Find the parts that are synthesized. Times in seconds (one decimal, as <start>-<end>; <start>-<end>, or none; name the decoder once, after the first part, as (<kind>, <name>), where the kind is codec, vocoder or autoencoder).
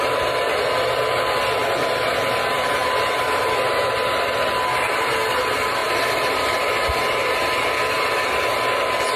5.8-6.6 (vocoder, BigVGAN v2)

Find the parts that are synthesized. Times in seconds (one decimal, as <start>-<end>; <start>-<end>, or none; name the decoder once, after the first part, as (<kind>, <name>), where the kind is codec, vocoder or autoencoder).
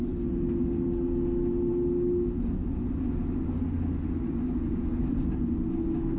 none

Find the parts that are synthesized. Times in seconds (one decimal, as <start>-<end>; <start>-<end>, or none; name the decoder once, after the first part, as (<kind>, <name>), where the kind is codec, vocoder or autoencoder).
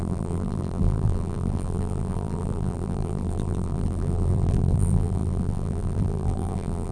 0.0-6.9 (vocoder, BigVGAN v2)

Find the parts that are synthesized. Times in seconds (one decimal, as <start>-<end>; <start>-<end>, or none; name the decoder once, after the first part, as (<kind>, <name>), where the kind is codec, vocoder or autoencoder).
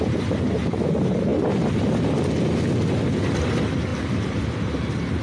3.9-4.4 (vocoder, BigVGAN v2)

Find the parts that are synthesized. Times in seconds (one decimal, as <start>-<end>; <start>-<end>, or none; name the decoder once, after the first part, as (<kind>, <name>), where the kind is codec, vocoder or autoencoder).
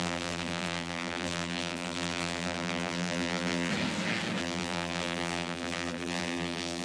0.0-3.7 (vocoder, BigVGAN v2); 4.4-6.8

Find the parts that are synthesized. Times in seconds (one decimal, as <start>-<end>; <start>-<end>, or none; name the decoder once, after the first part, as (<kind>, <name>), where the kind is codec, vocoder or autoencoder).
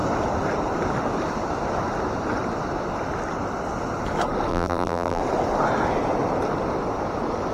4.5-5.2 (vocoder, BigVGAN v2)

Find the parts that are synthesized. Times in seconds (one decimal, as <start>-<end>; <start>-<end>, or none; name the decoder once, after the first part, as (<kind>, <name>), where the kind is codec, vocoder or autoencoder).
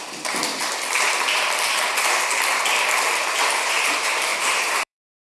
0.0-0.4 (vocoder, BigVGAN v2); 3.5-5.2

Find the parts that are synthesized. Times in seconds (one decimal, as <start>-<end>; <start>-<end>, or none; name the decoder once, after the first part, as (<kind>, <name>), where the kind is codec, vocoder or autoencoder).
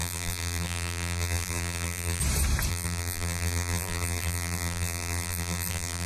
0.0-2.2 (vocoder, BigVGAN v2); 2.7-6.1